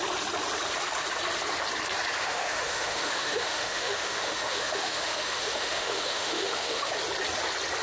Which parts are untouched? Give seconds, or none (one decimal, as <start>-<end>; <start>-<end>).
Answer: 0.0-2.2; 6.9-7.8